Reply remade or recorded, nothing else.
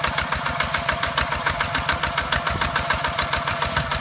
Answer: remade